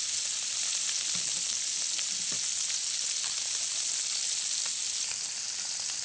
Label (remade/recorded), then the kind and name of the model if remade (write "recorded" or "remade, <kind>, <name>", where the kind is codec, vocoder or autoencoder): recorded